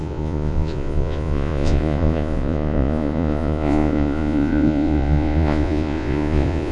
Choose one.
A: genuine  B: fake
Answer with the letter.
B